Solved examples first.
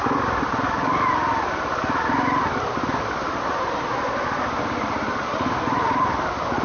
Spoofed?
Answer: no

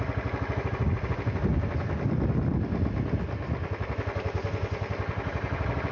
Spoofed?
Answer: no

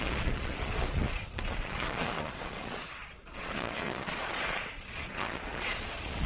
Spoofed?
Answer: yes